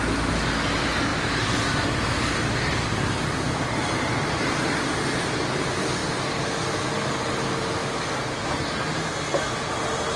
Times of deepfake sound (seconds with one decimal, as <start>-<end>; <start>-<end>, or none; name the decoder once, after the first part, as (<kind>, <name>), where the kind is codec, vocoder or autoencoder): none